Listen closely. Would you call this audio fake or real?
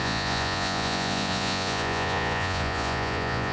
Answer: fake